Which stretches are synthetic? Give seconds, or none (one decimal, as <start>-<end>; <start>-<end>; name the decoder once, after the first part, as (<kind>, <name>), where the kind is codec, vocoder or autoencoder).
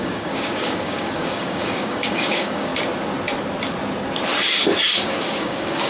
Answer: 0.0-2.7 (codec, DAC); 5.2-5.9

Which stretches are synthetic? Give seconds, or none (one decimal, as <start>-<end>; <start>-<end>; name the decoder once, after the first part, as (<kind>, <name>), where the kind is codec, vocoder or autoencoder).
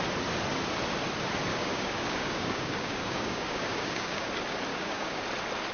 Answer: 1.5-4.3 (codec, DAC); 4.7-5.2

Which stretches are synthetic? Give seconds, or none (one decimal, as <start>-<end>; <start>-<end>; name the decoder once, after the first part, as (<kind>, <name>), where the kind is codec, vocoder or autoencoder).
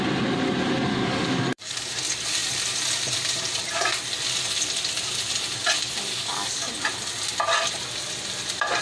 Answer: 0.9-1.9 (codec, DAC); 6.1-6.7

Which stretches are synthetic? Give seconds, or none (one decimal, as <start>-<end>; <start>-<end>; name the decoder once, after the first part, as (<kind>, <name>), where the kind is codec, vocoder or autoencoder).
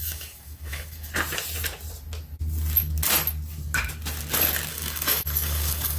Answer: 0.0-1.1 (codec, DAC); 4.7-6.0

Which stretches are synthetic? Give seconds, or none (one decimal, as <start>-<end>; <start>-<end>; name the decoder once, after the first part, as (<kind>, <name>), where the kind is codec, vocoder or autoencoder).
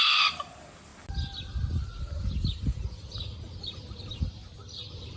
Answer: none